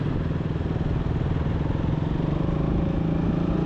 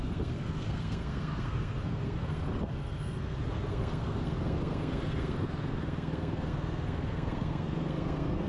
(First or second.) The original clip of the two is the first